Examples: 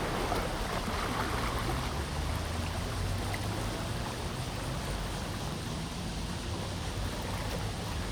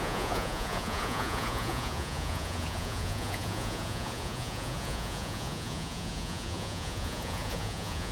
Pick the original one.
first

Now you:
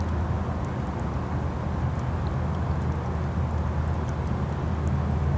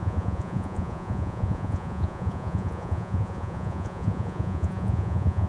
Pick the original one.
first